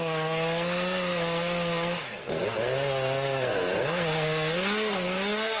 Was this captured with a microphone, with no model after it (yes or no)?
no